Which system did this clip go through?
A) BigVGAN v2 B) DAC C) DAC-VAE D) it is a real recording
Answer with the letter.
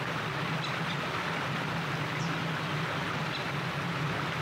D